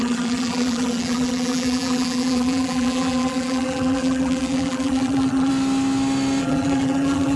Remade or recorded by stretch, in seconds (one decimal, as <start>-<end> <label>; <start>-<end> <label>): 0.0-5.5 remade; 5.5-6.4 recorded; 6.4-7.4 remade